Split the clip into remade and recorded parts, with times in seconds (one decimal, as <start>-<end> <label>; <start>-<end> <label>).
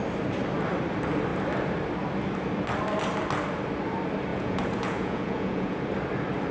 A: 0.0-4.3 recorded; 4.3-5.8 remade; 5.8-6.5 recorded